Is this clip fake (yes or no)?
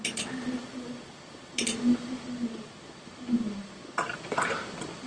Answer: no